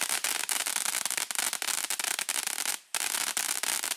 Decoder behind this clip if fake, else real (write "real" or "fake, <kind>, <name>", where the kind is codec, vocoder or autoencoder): real